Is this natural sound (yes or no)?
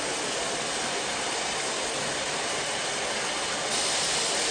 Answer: yes